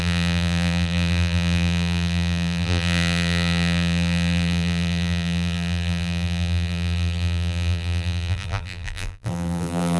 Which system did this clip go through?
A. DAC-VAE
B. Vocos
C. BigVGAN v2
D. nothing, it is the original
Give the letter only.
C